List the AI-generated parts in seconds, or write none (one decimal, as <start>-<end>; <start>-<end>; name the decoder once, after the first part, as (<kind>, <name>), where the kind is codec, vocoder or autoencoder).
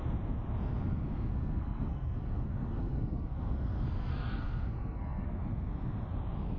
1.3-5.3 (codec, SNAC)